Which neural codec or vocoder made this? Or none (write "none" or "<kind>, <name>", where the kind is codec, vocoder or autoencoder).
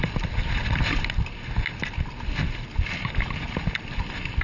none